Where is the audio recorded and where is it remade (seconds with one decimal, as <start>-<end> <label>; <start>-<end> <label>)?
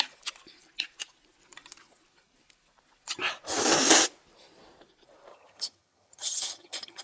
0.0-5.3 recorded; 5.3-7.0 remade